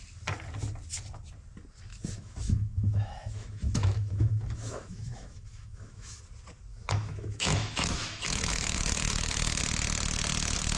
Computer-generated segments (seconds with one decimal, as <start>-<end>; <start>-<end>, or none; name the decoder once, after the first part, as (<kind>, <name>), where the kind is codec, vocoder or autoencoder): 1.9-6.2 (autoencoder, DAC-VAE); 6.7-9.6